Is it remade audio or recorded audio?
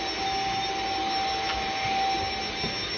recorded